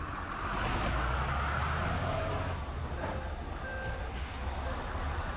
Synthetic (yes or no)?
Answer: no